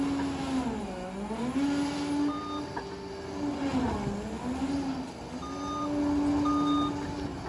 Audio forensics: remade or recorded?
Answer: recorded